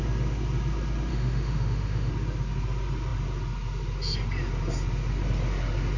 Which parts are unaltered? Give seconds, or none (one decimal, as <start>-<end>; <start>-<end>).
0.0-1.1; 2.1-6.0